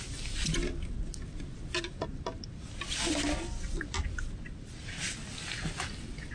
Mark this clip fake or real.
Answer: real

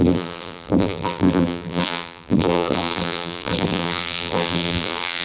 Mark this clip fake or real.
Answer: fake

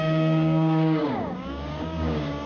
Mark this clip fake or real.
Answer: fake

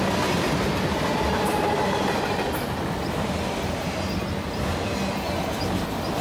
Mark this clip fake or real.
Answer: real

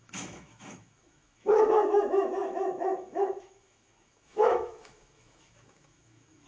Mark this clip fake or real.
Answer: fake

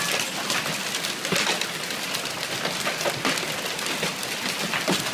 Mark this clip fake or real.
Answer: real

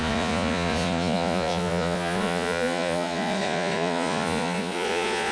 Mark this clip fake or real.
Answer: fake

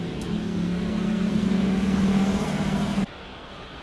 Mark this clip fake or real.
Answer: fake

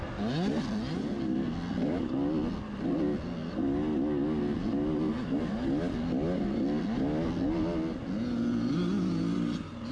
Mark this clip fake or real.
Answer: real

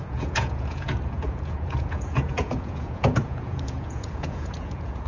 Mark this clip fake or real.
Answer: fake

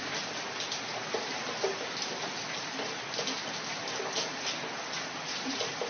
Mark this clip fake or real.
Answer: real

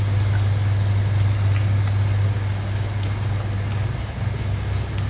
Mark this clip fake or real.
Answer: real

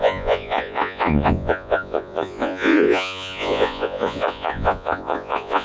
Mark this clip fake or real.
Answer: fake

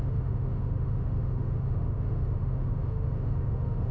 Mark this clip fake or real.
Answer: fake